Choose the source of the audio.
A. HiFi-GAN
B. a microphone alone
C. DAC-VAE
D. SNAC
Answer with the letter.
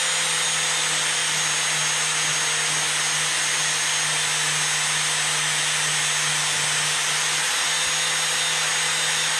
B